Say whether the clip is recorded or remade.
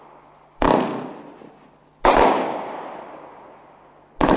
recorded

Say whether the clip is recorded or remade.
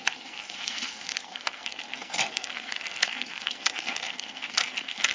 remade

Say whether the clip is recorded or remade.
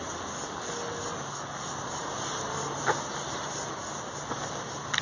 recorded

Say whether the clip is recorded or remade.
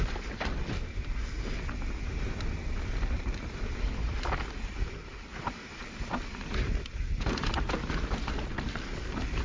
recorded